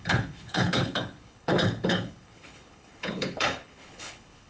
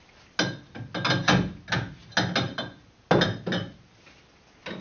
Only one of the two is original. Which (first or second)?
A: second